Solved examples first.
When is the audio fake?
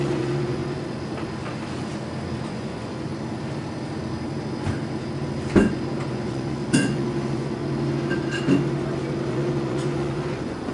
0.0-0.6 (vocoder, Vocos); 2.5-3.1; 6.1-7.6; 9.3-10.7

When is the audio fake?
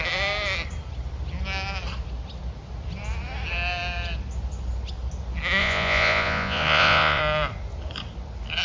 5.6-7.2 (vocoder, Vocos)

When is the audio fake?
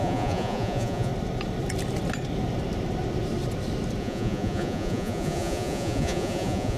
0.0-1.1 (vocoder, Vocos); 4.0-6.8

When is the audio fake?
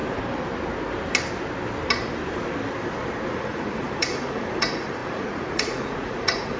3.3-6.6 (vocoder, Vocos)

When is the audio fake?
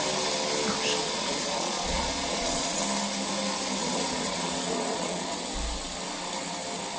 1.0-2.8 (vocoder, Vocos); 3.8-5.4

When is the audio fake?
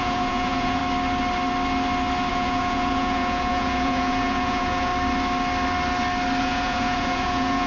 0.0-0.8 (vocoder, Vocos); 2.3-4.9; 6.4-7.7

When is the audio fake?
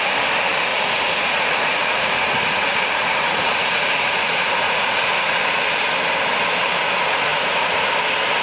0.7-5.4 (vocoder, Vocos); 7.3-7.9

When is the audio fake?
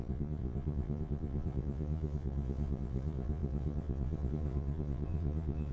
0.0-5.7 (vocoder, Vocos)